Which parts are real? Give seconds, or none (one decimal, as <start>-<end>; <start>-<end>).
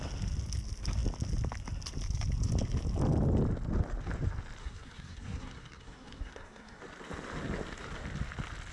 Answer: 0.0-4.6; 6.8-8.7